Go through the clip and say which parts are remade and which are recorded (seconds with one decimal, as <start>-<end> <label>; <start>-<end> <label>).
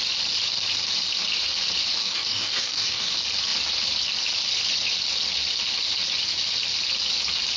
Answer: 0.0-2.0 recorded; 2.0-3.1 remade; 3.1-7.6 recorded